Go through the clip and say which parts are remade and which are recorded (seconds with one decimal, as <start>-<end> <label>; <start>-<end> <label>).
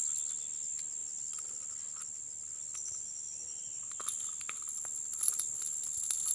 0.0-6.3 recorded